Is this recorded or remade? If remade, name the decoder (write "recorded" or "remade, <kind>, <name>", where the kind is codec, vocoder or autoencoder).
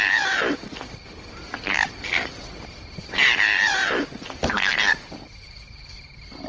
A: recorded